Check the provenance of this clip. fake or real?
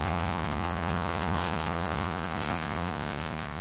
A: fake